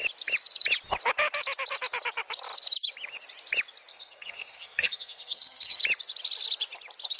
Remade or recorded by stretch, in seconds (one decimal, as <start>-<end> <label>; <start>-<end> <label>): 0.0-3.9 recorded; 3.9-5.8 remade; 5.8-7.2 recorded